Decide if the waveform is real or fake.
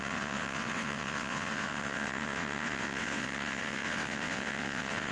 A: fake